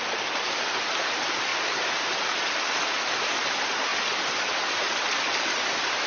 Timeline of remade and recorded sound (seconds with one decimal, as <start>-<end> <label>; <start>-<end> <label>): 0.0-1.5 remade; 1.5-2.8 recorded; 2.8-3.9 remade; 3.9-5.6 recorded; 5.6-6.1 remade